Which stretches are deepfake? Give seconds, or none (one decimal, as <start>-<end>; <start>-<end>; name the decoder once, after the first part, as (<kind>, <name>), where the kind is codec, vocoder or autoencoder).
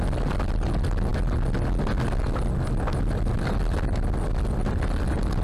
none